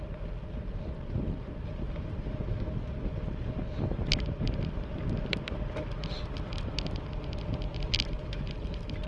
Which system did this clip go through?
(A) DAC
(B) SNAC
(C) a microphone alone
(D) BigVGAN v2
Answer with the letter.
C